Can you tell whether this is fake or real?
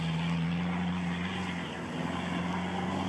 real